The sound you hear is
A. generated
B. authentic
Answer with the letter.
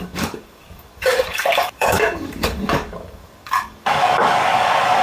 A